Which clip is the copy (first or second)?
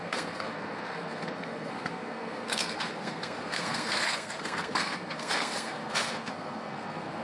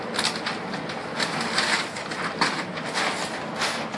first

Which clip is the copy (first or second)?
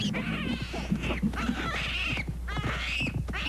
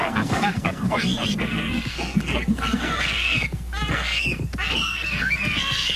second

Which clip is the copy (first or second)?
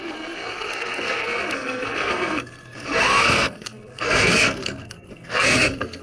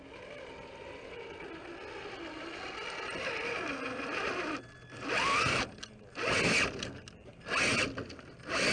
first